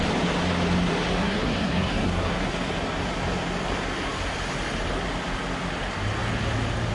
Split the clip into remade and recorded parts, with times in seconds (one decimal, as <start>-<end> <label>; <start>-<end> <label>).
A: 0.0-1.2 recorded; 1.2-2.5 remade; 2.5-6.9 recorded